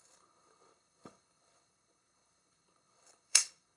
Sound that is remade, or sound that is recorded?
remade